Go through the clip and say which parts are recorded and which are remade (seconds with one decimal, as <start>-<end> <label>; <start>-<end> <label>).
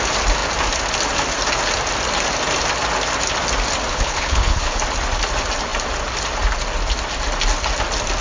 0.0-3.9 recorded; 3.9-4.8 remade; 4.8-8.2 recorded